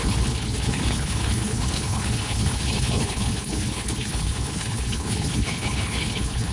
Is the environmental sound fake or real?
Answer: fake